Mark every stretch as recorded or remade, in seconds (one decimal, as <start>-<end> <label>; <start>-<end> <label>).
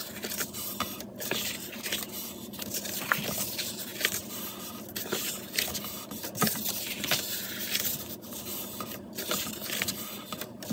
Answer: 0.0-10.7 recorded